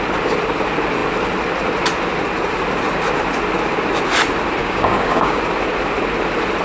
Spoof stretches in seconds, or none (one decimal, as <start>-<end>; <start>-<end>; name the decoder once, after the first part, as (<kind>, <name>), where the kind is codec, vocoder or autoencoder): 4.6-5.4 (codec, DAC)